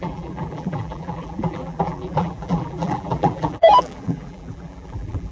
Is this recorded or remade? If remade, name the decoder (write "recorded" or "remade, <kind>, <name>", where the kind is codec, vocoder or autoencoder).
remade, vocoder, BigVGAN v2